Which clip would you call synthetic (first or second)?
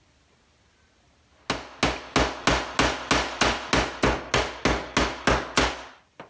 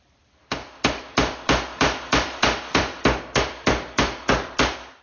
second